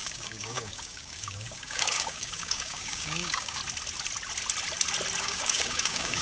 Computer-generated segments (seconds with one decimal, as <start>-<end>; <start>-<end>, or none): 0.0-3.6; 5.2-6.2